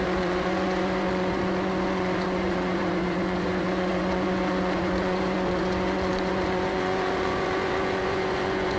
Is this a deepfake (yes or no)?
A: yes